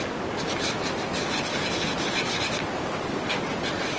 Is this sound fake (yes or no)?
no